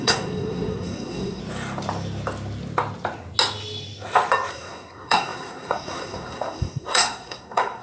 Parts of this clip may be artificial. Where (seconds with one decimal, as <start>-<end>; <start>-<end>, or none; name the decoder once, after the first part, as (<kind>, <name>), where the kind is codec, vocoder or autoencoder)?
0.0-1.4 (codec, SNAC); 4.5-7.8